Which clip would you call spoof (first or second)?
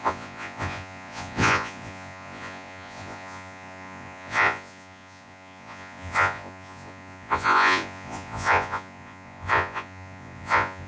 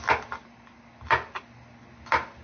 first